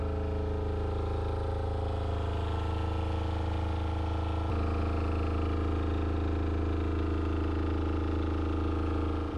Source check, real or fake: real